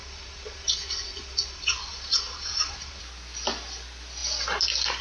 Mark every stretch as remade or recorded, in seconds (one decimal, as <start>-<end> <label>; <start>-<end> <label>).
0.0-3.0 remade; 3.0-5.0 recorded